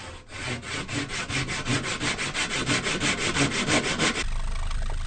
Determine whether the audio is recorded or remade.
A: recorded